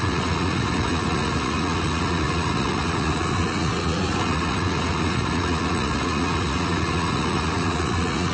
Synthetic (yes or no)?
yes